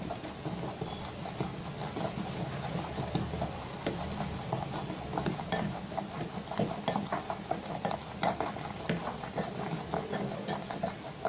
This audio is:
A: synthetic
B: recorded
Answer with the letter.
B